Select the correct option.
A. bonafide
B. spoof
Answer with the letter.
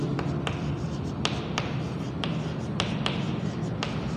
A